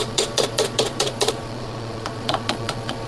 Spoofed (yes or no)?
yes